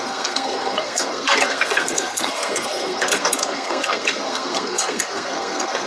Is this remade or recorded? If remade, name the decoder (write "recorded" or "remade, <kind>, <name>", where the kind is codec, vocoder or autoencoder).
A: remade, codec, SNAC